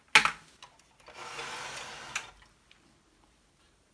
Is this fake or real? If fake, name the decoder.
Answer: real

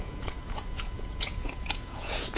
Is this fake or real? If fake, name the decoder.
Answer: fake, vocoder, Vocos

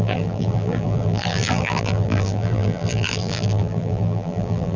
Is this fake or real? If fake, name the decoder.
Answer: fake, vocoder, BigVGAN v2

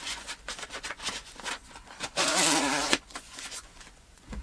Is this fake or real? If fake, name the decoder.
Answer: fake, vocoder, Vocos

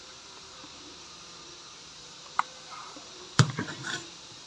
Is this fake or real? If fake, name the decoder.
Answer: fake, vocoder, BigVGAN v2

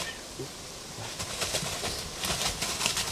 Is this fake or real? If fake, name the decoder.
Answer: real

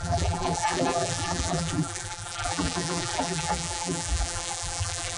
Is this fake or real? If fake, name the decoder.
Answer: fake, vocoder, BigVGAN v2